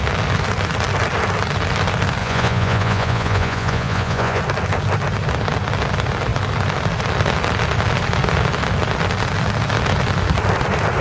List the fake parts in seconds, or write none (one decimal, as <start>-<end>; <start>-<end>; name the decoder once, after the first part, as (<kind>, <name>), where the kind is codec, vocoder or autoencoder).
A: 2.2-4.4 (vocoder, Vocos)